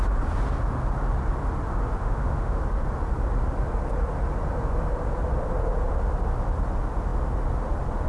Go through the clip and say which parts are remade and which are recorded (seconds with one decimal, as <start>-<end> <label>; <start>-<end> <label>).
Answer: 0.0-2.0 recorded; 2.0-2.6 remade; 2.6-8.1 recorded